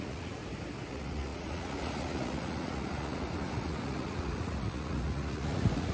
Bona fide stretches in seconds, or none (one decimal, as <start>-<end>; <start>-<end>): 0.4-0.9